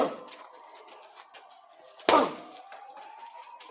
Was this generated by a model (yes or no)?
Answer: no